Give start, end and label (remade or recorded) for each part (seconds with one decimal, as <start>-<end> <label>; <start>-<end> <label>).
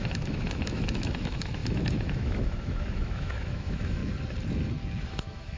0.0-4.0 remade; 4.0-5.1 recorded; 5.1-5.6 remade